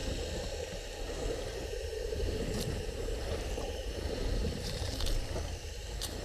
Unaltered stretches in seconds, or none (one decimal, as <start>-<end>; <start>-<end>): 0.0-1.5; 5.2-6.2